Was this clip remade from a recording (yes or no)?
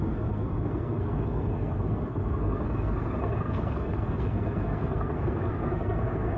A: yes